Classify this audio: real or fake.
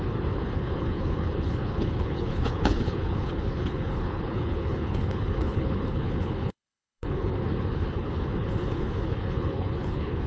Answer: fake